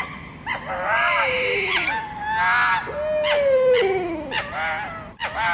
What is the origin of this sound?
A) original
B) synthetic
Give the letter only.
A